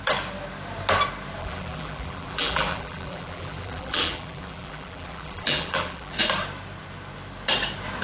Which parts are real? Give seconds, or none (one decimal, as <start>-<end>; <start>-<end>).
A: 0.0-1.4; 6.2-8.0